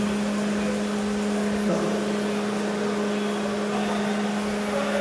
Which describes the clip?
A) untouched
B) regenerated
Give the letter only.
A